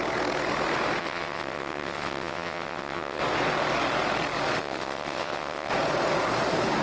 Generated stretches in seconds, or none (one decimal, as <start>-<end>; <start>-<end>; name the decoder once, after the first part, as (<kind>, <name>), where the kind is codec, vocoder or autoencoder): 1.0-3.2 (vocoder, WaveNeXt); 4.6-5.7